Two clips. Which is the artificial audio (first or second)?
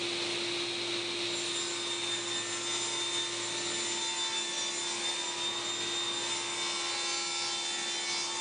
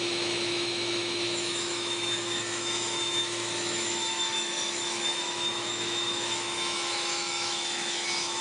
second